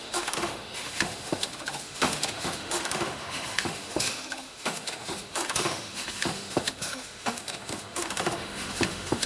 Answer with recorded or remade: remade